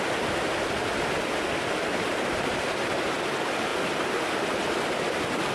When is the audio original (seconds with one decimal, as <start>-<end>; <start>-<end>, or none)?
0.0-5.5

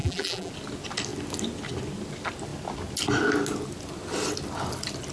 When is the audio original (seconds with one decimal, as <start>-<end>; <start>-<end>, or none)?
0.5-5.1

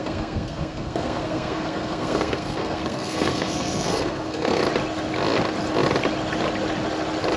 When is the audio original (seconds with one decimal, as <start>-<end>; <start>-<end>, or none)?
4.6-7.4

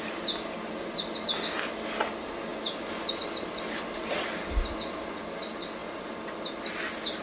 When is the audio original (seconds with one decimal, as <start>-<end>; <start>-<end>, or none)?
0.0-7.2

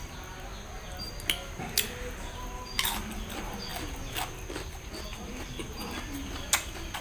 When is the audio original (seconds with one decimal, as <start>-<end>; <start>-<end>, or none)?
0.0-7.0

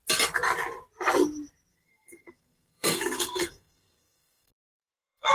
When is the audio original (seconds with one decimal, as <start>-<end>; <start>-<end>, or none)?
0.0-1.7